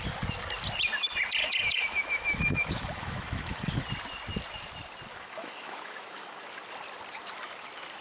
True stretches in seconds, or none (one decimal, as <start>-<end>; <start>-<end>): 0.0-1.4; 3.7-5.1; 6.5-8.0